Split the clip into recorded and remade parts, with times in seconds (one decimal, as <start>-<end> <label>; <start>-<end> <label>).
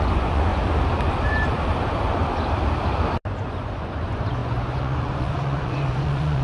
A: 0.0-0.5 remade; 0.5-3.4 recorded; 3.4-6.4 remade